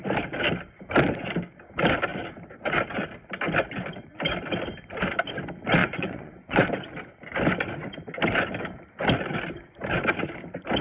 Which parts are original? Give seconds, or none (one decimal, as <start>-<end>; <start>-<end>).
0.0-5.8; 6.7-10.8